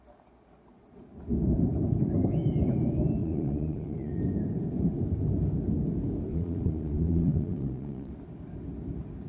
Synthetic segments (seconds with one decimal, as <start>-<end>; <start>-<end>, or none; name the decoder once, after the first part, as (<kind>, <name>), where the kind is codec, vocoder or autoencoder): 3.2-4.2 (vocoder, Vocos); 6.3-8.1